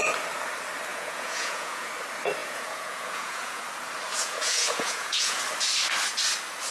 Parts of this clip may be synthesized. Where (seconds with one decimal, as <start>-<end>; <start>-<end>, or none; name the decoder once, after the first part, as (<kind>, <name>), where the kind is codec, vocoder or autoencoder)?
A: 0.9-1.9 (vocoder, Vocos); 2.4-3.6; 4.1-5.4